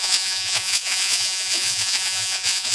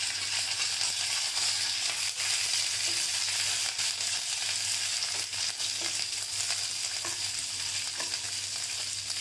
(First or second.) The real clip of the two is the second